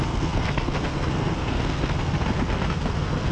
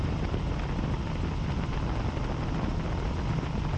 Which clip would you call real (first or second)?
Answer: second